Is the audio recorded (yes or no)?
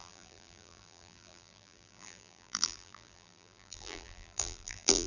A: no